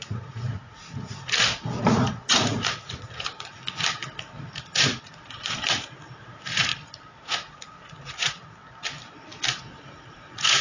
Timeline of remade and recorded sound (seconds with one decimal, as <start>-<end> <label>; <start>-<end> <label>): 0.0-3.6 remade; 3.6-4.5 recorded; 4.5-6.7 remade; 6.7-7.2 recorded; 7.2-8.6 remade; 8.6-9.7 recorded; 9.7-10.6 remade